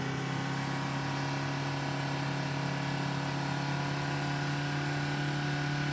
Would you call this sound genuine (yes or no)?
yes